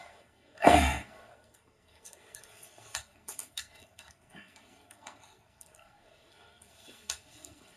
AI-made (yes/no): yes